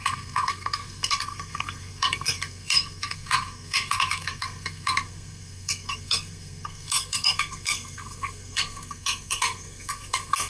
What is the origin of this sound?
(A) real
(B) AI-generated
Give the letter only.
B